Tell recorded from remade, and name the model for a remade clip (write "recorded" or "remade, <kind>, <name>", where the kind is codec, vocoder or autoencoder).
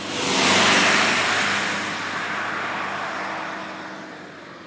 recorded